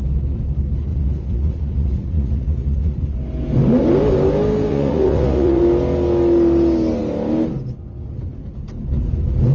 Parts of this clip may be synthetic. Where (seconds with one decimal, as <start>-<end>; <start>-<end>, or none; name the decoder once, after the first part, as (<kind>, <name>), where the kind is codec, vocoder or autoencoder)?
0.9-3.1 (vocoder, Vocos); 4.7-5.6